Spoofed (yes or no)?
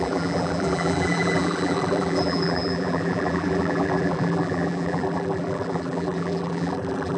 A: yes